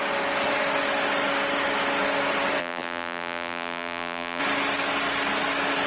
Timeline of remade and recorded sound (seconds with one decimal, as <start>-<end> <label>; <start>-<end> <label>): 0.0-2.6 recorded; 2.6-4.4 remade; 4.4-5.9 recorded